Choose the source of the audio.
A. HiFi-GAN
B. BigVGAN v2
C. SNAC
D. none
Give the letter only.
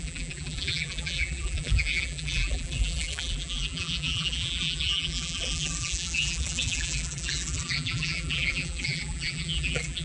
B